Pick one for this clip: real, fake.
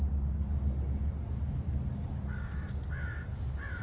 real